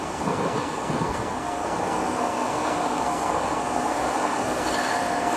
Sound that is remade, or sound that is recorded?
remade